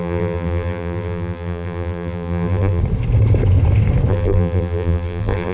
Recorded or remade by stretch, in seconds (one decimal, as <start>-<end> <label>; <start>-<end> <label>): 0.0-2.8 remade; 2.8-4.1 recorded; 4.1-5.5 remade